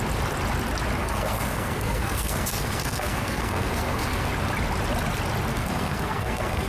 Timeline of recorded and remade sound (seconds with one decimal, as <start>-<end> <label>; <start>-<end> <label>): 0.0-1.0 recorded; 1.0-4.3 remade; 4.3-5.5 recorded; 5.5-6.7 remade